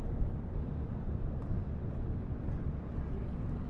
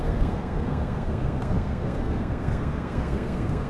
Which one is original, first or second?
first